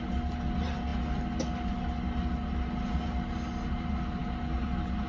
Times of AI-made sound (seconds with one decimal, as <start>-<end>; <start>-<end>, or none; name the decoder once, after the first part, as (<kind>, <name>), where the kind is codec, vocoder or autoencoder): none